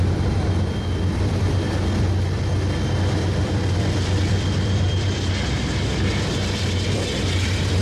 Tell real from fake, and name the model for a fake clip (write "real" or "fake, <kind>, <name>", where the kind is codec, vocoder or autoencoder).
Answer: real